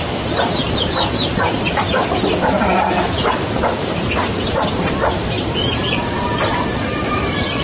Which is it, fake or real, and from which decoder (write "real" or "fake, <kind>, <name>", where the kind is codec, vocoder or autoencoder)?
fake, vocoder, BigVGAN v2